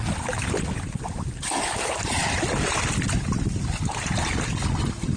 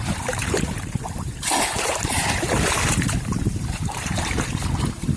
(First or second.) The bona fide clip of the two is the first